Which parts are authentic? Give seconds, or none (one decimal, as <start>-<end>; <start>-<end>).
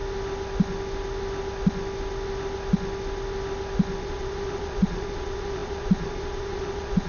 0.0-4.0